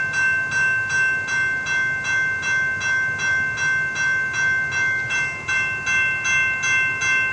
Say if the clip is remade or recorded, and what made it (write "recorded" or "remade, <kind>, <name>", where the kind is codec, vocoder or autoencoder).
recorded